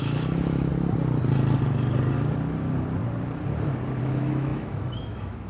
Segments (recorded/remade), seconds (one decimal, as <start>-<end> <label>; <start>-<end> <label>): 0.0-0.7 remade; 0.7-4.0 recorded; 4.0-5.5 remade